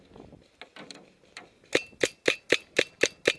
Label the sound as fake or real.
real